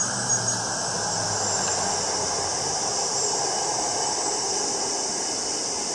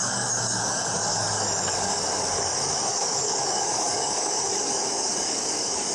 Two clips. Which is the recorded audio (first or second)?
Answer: first